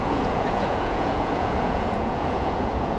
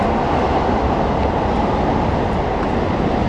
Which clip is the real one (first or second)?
second